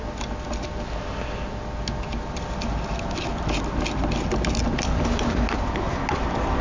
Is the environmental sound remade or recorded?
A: recorded